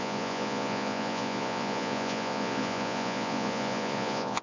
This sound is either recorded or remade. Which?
remade